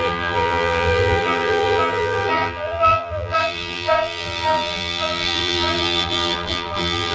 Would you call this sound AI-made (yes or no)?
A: yes